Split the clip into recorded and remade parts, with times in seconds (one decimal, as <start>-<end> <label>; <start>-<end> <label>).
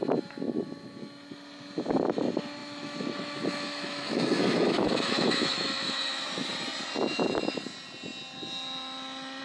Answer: 0.0-2.6 recorded; 2.6-6.5 remade; 6.5-9.4 recorded